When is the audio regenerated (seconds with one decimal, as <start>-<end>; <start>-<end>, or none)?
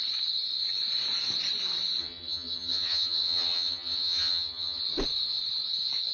2.0-4.8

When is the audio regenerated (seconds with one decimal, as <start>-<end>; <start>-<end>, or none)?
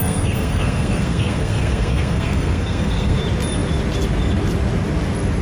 0.0-3.2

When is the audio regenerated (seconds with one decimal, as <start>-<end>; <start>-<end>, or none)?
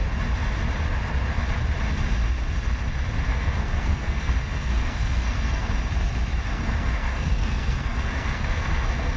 3.3-5.7; 6.5-9.2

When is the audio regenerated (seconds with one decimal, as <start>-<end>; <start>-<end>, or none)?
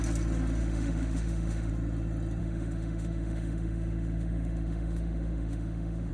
0.6-1.7; 2.4-6.1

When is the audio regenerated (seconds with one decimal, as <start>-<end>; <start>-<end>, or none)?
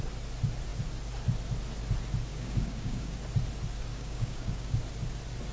2.3-3.2; 3.9-4.8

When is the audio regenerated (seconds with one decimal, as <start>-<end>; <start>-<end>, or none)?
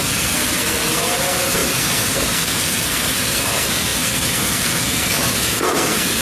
0.0-6.2